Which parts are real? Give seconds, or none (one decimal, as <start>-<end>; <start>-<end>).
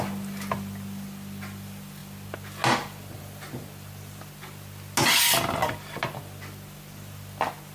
0.0-7.7